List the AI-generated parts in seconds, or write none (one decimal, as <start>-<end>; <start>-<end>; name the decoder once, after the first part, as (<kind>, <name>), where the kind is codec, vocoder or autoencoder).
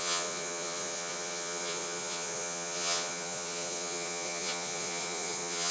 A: 0.0-5.7 (vocoder, Vocos)